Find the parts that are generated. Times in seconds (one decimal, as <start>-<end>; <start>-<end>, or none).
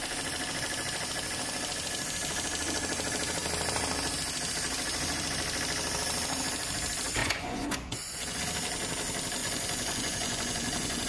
7.2-8.4; 9.4-11.1